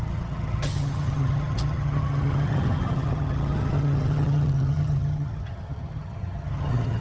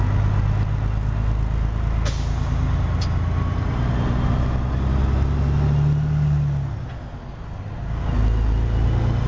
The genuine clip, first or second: second